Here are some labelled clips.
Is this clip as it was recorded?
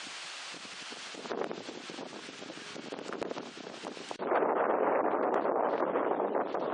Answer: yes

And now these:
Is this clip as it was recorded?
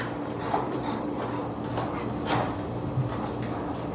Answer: yes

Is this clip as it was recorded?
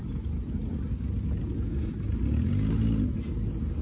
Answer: yes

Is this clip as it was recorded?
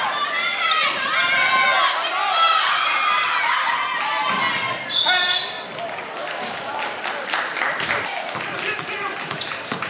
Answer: yes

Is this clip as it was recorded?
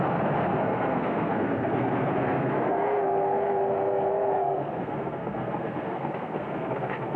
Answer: no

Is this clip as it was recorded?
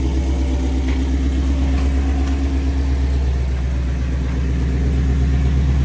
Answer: yes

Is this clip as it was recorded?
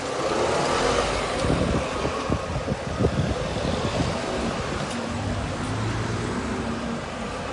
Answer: yes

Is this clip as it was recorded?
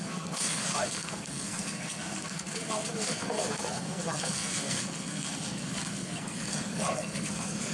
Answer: no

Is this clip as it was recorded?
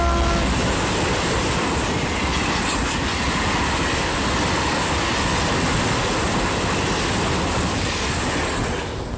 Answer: yes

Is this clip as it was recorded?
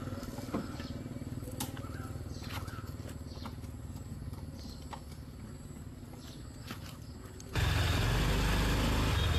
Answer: yes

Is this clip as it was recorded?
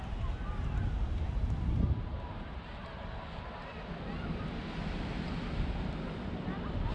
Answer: yes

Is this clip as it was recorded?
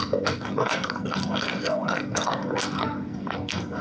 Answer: no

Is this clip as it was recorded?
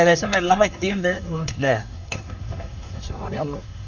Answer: no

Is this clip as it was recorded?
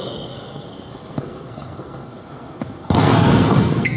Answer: no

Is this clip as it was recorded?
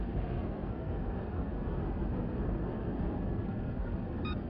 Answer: no